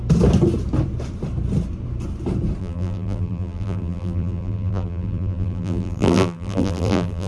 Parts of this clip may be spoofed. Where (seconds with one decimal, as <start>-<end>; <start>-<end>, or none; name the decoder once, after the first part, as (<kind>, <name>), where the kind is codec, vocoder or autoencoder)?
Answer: 2.6-7.3 (vocoder, BigVGAN v2)

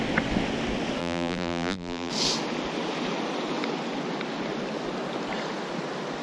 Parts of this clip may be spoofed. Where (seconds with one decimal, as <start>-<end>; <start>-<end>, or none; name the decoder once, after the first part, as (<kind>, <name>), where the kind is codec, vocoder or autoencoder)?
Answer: 1.0-2.1 (vocoder, BigVGAN v2)

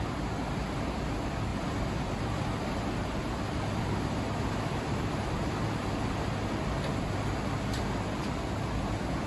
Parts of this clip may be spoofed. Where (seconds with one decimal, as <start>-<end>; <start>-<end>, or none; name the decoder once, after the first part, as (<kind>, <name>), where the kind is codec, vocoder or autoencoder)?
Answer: 1.5-6.6 (vocoder, BigVGAN v2)

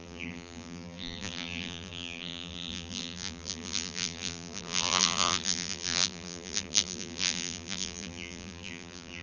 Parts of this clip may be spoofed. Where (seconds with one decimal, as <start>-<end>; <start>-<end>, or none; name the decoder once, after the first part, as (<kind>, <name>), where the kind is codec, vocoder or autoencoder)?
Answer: 0.0-9.2 (vocoder, BigVGAN v2)

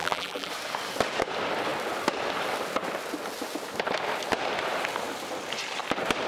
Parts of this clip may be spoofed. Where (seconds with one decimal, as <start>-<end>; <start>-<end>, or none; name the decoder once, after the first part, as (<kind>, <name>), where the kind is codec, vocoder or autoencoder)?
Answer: 0.0-0.5 (vocoder, BigVGAN v2)

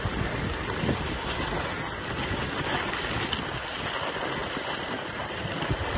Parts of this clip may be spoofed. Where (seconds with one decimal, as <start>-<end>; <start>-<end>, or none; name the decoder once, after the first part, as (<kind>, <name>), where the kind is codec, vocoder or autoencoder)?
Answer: 4.4-5.5 (vocoder, BigVGAN v2)